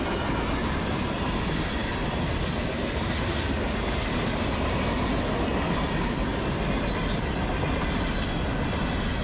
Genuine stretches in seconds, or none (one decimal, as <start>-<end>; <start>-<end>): 0.0-5.5; 7.7-9.2